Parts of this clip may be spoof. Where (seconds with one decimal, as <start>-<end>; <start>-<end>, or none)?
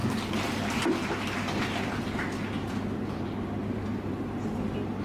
none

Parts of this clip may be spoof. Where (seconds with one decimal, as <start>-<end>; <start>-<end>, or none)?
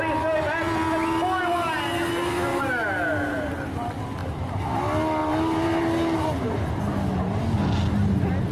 2.5-3.5; 4.2-4.8; 5.2-6.6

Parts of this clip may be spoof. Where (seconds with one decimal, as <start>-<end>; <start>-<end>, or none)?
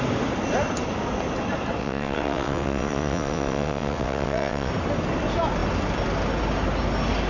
1.8-4.7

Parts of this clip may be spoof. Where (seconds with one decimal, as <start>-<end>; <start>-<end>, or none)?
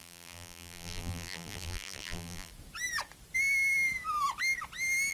0.0-2.5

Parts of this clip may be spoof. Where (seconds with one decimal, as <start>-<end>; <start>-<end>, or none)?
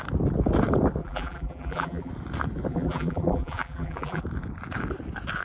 1.0-2.1; 2.7-4.2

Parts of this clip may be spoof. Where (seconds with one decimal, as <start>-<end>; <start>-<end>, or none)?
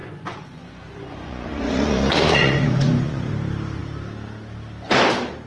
0.0-3.3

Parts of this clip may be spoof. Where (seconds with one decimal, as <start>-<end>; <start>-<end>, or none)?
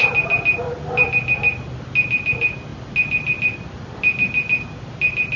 none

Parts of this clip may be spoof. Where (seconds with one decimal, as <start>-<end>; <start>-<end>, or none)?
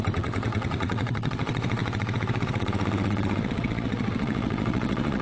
0.0-5.2